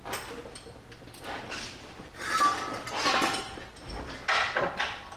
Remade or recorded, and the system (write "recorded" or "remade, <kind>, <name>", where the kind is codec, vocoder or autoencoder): recorded